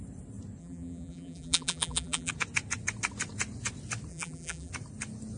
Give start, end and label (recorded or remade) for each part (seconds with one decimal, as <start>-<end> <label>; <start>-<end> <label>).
0.0-0.6 recorded; 0.6-2.3 remade; 2.3-4.1 recorded; 4.1-4.7 remade; 4.7-5.4 recorded